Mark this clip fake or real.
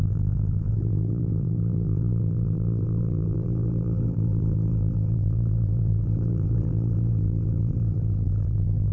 fake